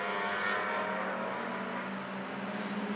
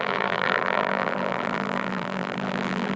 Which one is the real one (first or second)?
first